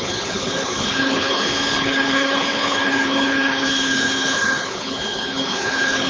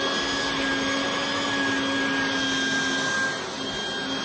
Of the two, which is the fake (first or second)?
first